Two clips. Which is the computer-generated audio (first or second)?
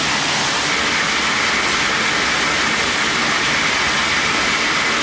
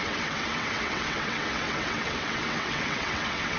second